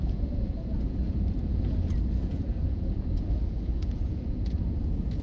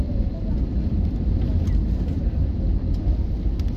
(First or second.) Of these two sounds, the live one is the second